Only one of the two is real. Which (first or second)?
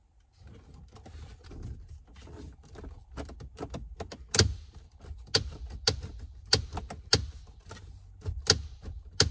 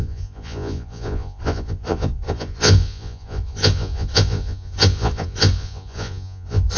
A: first